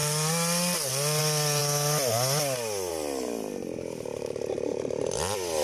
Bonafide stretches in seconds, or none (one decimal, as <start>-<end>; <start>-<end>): 0.0-5.6